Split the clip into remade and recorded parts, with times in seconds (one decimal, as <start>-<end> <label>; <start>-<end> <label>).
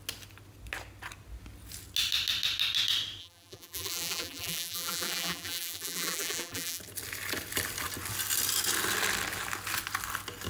0.0-3.2 recorded; 3.2-6.8 remade; 6.8-10.5 recorded